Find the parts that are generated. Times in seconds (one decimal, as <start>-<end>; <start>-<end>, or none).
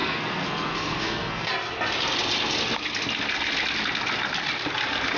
0.0-1.5